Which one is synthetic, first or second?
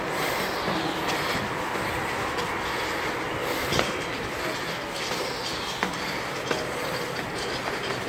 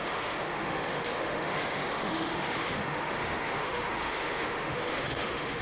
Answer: second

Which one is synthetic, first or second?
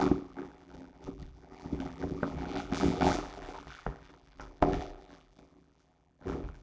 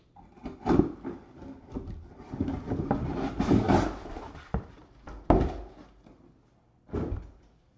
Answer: first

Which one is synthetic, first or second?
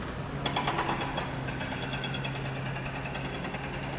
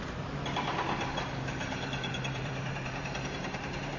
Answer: second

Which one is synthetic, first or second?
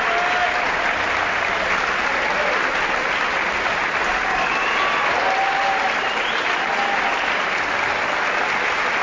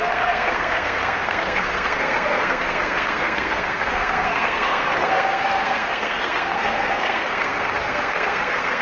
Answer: second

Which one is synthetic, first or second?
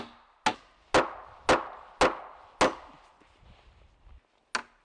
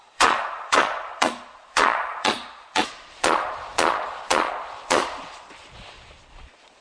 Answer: second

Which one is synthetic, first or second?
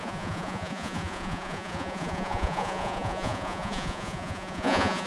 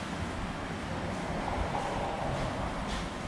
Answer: first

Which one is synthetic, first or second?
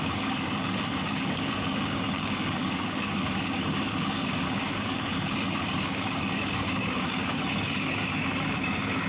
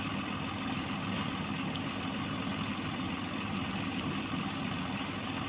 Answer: first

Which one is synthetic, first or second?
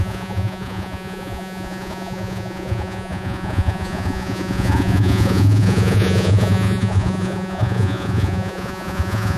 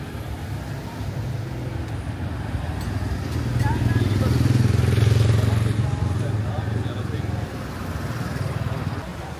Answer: first